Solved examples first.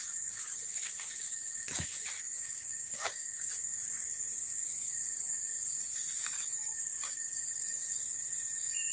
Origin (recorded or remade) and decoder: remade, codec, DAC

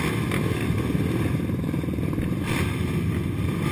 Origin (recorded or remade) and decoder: recorded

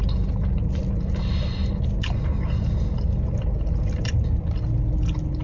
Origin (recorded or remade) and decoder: recorded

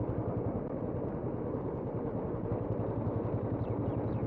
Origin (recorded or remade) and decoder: recorded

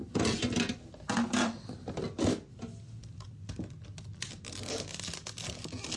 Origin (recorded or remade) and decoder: recorded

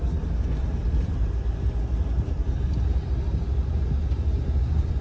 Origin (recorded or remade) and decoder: recorded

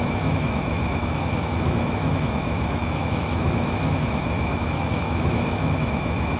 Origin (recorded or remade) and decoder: remade, autoencoder, DAC-VAE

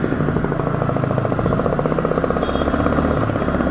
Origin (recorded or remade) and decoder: recorded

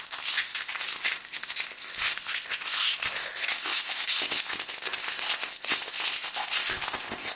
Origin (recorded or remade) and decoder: remade, codec, ZipCodec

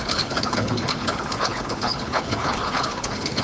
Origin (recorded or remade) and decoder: remade, codec, HILCodec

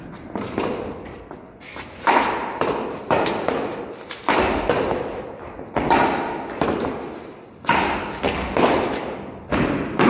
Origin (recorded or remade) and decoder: recorded